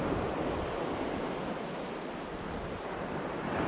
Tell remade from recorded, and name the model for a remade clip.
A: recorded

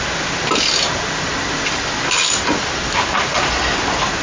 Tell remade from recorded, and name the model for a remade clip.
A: recorded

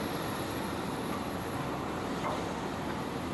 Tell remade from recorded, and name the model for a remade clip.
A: remade, vocoder, BigVGAN v2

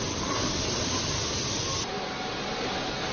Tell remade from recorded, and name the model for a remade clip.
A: recorded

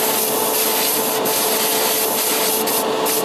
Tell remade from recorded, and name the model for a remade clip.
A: recorded